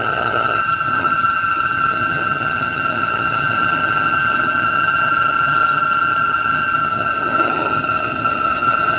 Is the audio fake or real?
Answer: fake